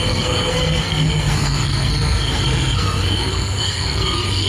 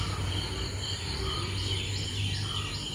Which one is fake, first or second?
first